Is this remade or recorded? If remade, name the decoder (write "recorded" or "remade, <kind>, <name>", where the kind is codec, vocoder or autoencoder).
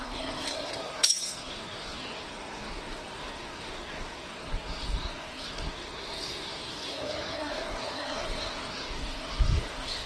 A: remade, codec, SNAC